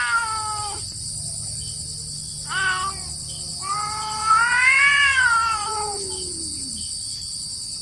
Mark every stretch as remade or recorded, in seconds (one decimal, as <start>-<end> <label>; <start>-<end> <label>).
0.0-3.5 recorded; 3.5-6.7 remade; 6.7-7.8 recorded